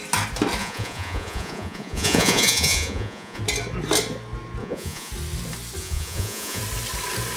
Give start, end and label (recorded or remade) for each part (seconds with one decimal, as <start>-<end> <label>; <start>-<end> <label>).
0.0-0.6 recorded; 0.6-3.4 remade; 3.4-4.6 recorded; 4.6-5.1 remade; 5.1-5.8 recorded; 5.8-6.6 remade; 6.6-7.4 recorded